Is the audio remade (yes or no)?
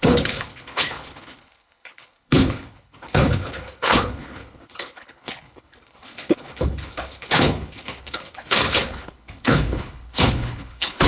yes